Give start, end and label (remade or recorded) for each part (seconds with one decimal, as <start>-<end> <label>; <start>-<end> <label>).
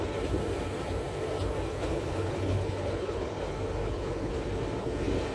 0.0-1.9 recorded; 1.9-3.4 remade; 3.4-3.8 recorded; 3.8-4.3 remade; 4.3-5.3 recorded